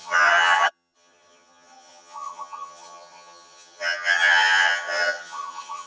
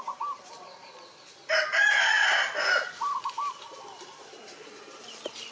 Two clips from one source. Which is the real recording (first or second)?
second